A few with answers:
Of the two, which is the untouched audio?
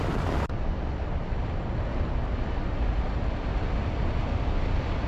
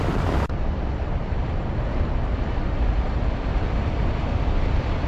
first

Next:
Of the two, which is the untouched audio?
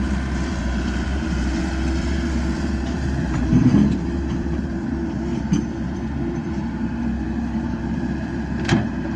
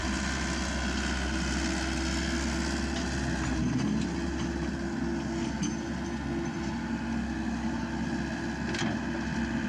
second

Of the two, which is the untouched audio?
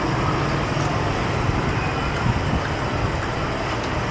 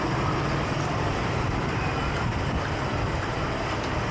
first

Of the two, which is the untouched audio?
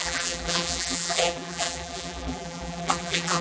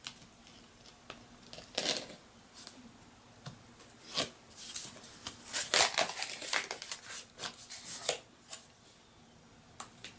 second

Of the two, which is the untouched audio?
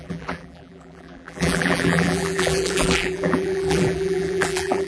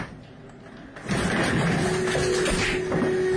second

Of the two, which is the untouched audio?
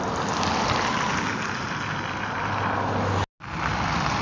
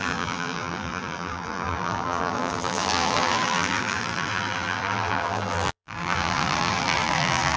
first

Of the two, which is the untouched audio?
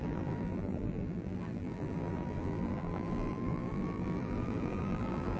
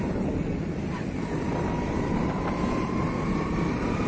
second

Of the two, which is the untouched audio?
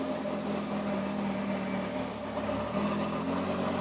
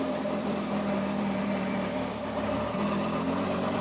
first